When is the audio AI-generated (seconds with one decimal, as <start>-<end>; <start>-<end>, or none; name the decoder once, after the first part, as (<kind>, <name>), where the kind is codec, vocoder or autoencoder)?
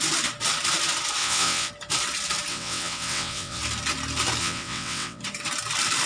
1.2-1.7 (vocoder, WaveNeXt); 2.5-3.6; 4.4-5.2